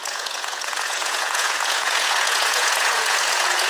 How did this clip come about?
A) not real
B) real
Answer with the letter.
A